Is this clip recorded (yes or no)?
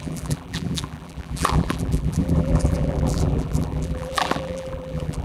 no